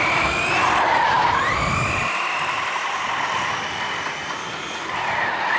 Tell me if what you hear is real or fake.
real